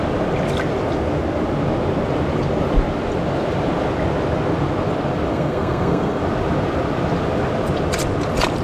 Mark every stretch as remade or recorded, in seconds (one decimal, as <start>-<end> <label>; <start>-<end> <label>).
0.0-5.3 recorded; 5.3-6.2 remade; 6.2-8.6 recorded